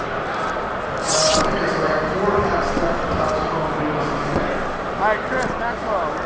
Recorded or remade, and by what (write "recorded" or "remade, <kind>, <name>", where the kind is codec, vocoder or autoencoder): recorded